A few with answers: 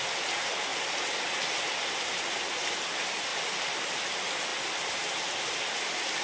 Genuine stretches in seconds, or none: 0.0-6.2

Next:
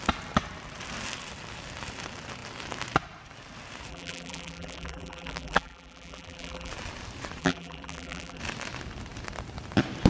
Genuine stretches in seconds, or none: 0.0-3.9; 6.7-7.4; 8.4-10.1

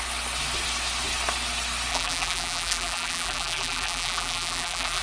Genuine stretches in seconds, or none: 0.0-1.9

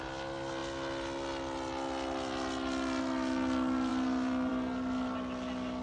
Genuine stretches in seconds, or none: 0.0-5.8

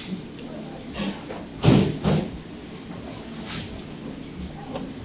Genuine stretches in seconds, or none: 0.0-5.0

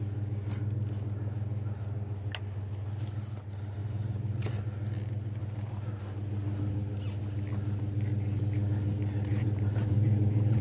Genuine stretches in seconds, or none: 0.0-3.8; 4.6-5.4; 6.0-9.3

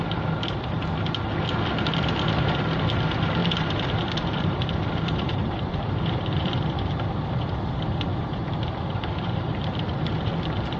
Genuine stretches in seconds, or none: 0.0-3.4; 6.6-8.1; 10.4-10.8

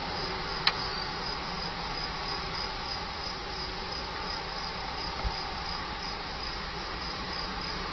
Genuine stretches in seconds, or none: 0.5-7.9